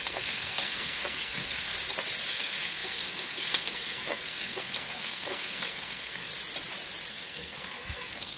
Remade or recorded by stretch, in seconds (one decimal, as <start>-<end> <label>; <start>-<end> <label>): 0.0-1.7 remade; 1.7-2.3 recorded; 2.3-6.3 remade; 6.3-7.1 recorded; 7.1-8.4 remade